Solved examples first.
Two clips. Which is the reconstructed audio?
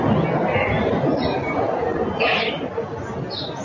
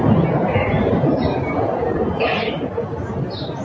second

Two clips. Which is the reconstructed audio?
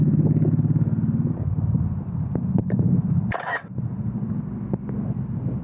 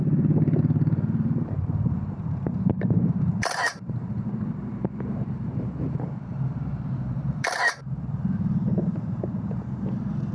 second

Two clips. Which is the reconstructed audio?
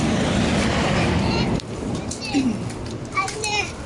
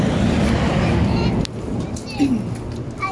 first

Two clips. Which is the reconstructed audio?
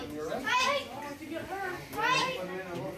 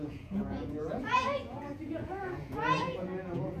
second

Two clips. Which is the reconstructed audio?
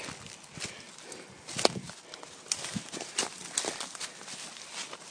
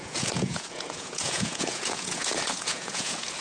second